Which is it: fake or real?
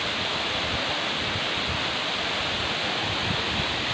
real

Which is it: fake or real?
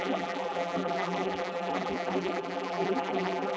fake